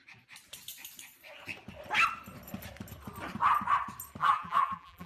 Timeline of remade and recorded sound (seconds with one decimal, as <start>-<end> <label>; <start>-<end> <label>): 0.0-4.2 recorded; 4.2-5.1 remade